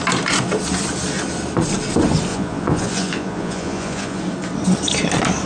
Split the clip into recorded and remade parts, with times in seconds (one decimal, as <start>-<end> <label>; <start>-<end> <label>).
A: 0.0-2.3 recorded; 2.3-4.2 remade; 4.2-5.5 recorded